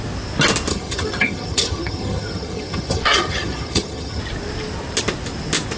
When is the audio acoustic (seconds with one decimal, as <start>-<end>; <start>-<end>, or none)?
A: 0.0-0.7; 4.2-5.8

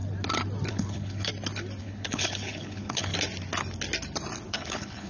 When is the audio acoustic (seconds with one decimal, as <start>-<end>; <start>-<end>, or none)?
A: 0.0-0.7; 1.3-1.8; 3.1-4.5

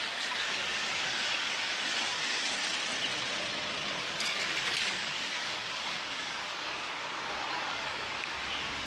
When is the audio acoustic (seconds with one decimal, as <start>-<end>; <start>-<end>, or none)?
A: 2.6-4.0